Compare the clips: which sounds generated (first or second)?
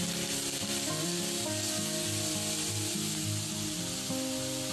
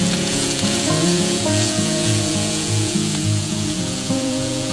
second